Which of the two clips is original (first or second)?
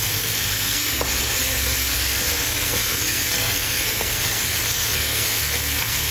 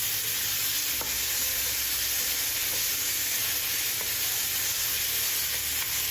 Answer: second